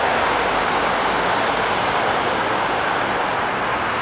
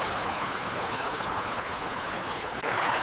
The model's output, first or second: second